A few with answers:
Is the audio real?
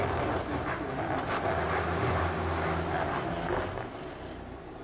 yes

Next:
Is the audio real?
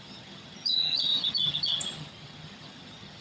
no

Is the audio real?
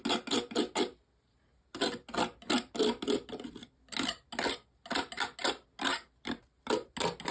yes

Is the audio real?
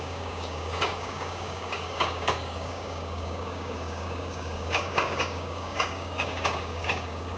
no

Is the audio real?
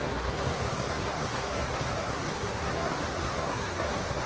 no